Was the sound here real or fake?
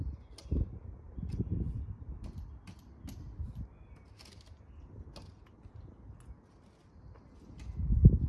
real